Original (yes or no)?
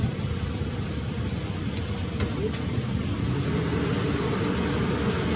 yes